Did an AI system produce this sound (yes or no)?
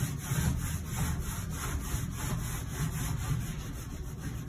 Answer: no